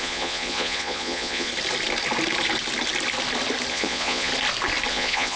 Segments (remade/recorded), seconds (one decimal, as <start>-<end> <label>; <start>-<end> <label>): 0.0-1.5 remade; 1.5-3.7 recorded; 3.7-4.3 remade; 4.3-4.9 recorded; 4.9-5.4 remade